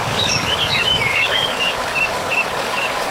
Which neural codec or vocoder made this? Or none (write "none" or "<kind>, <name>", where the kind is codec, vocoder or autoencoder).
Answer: codec, DAC